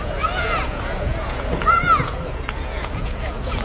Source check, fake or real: fake